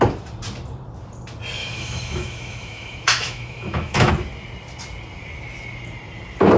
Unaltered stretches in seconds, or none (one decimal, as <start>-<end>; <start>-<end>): 0.0-1.6; 4.1-6.6